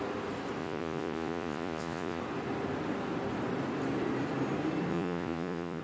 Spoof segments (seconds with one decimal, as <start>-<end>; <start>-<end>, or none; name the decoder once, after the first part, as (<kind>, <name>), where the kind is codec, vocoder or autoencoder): 0.6-2.2 (vocoder, Vocos); 4.9-5.8